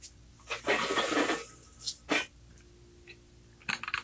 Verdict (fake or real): real